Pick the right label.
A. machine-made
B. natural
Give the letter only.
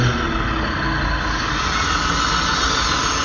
B